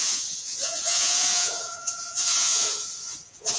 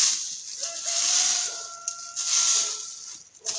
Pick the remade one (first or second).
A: first